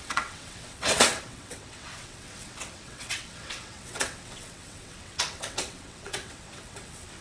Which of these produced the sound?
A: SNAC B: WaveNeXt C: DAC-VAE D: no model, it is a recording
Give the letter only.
B